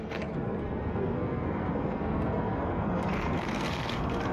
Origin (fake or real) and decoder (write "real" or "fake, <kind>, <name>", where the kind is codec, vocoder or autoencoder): fake, codec, SNAC